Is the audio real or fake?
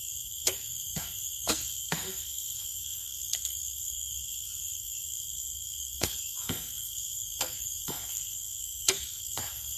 fake